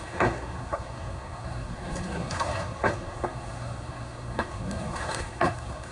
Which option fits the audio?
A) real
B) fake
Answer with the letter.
B